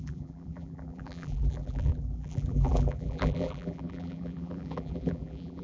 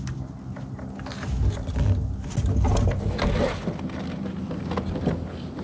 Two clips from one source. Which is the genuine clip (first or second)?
second